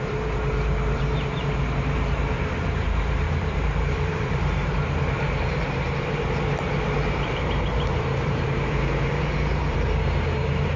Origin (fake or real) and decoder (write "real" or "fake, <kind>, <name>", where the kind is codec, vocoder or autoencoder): fake, vocoder, BigVGAN v2